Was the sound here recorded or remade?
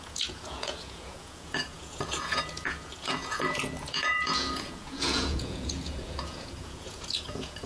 remade